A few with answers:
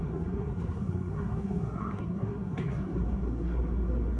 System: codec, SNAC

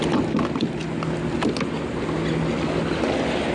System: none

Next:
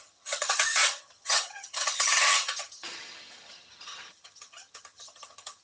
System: vocoder, HiFi-GAN